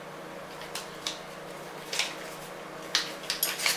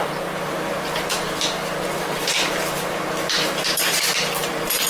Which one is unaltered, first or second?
first